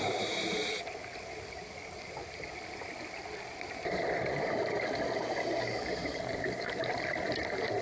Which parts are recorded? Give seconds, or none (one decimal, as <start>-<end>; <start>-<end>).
0.0-6.0; 6.8-7.8

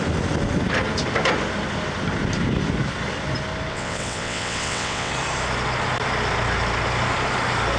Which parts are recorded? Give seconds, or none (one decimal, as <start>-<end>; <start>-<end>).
0.0-3.7; 5.1-7.8

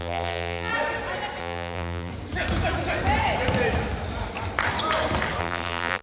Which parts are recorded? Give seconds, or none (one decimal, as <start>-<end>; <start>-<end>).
0.7-1.4; 2.1-5.4

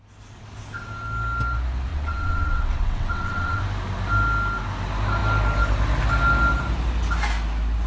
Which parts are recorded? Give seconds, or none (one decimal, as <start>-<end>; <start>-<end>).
0.0-1.9; 3.6-7.9